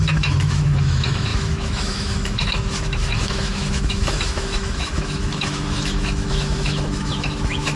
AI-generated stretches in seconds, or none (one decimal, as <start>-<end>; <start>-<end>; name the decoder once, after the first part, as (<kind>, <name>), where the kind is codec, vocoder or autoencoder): 0.0-7.8 (autoencoder, DAC-VAE)